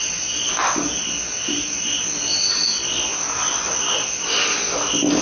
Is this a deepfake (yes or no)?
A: no